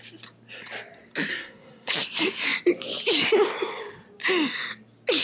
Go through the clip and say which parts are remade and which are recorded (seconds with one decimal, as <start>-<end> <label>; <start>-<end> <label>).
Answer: 0.0-1.3 recorded; 1.3-1.9 remade; 1.9-5.2 recorded

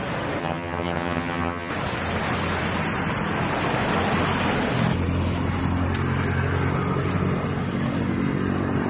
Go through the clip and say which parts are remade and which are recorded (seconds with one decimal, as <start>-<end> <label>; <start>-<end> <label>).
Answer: 0.0-0.4 recorded; 0.4-1.7 remade; 1.7-8.9 recorded